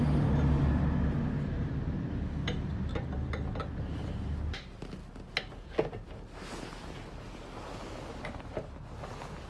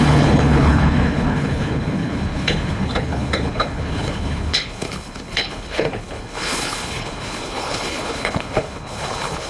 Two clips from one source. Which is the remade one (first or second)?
second